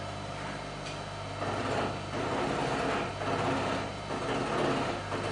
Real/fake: real